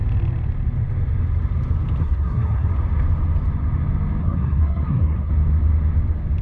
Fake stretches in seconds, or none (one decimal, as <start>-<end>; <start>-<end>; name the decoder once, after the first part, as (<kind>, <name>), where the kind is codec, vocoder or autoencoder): 2.0-2.7 (codec, SNAC); 4.2-5.3